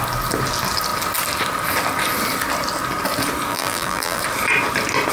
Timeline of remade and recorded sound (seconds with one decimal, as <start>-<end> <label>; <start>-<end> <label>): 0.0-3.5 recorded; 3.5-4.2 remade; 4.2-5.1 recorded